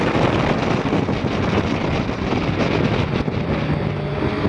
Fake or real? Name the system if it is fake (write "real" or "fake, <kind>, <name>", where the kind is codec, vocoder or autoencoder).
real